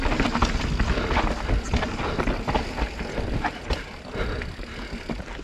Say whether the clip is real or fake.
real